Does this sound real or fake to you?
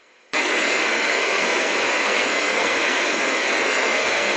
fake